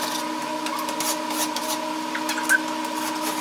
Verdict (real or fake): real